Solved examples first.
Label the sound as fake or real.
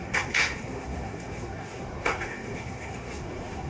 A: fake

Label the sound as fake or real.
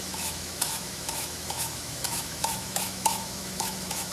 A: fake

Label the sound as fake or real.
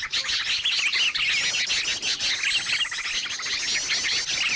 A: real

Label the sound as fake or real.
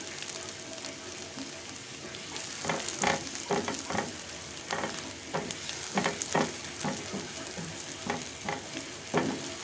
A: real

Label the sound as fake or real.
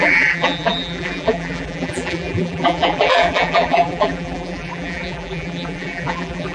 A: fake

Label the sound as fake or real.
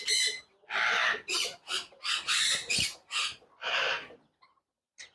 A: real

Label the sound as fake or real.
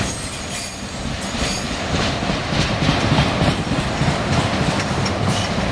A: real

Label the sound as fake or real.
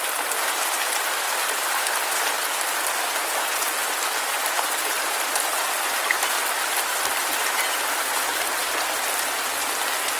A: real